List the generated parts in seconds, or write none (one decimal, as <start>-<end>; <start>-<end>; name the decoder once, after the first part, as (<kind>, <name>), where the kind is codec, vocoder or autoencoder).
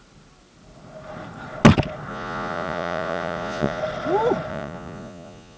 2.1-3.8 (vocoder, Vocos); 4.5-5.6